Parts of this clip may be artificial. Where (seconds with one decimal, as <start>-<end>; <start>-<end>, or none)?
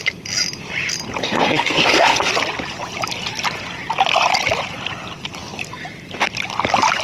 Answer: 1.2-2.3